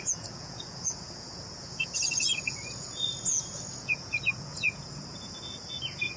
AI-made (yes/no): yes